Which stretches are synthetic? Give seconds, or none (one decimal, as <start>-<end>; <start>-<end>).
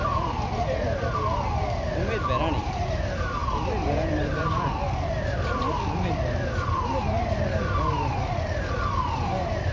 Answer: none